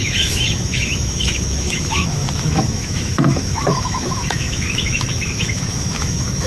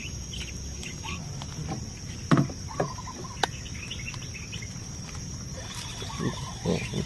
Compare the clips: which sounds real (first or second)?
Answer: second